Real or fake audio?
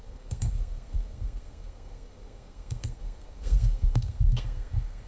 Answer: fake